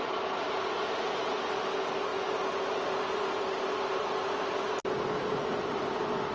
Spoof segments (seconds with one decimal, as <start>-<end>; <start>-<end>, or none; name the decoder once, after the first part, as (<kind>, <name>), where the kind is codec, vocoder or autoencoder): 5.2-5.8 (vocoder, BigVGAN v2)